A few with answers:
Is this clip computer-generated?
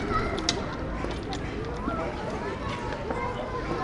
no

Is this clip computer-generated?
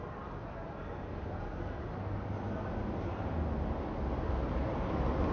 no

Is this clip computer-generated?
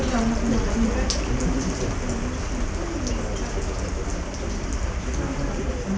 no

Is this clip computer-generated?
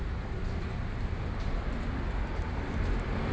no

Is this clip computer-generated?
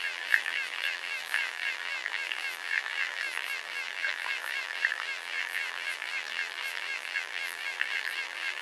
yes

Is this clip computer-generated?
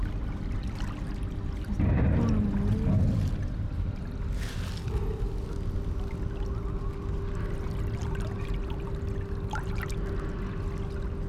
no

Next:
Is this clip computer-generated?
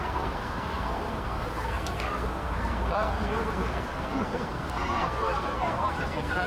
yes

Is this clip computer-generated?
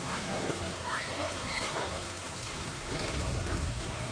yes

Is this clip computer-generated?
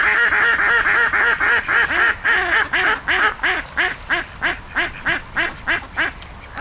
no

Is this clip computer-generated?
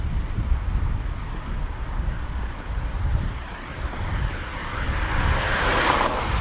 no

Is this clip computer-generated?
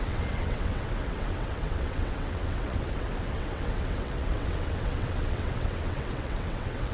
yes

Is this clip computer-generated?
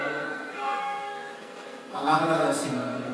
yes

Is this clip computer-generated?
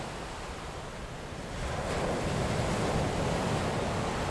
no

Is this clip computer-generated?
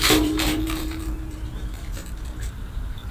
yes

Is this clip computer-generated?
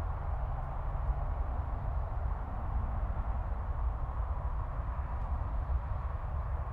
no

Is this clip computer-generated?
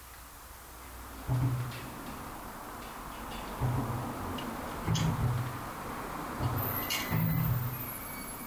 no